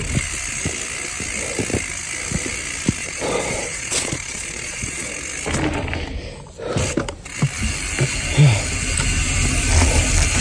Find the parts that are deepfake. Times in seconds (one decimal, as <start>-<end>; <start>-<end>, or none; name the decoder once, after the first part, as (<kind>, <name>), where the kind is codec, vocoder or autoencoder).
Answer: 3.0-5.1 (vocoder, Vocos)